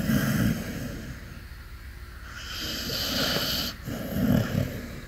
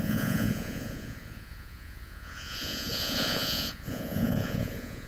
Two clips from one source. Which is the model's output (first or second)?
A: second